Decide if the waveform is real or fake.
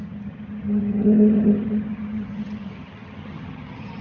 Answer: fake